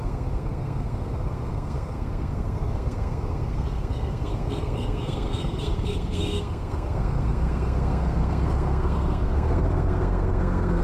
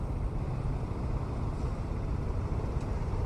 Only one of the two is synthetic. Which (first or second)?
first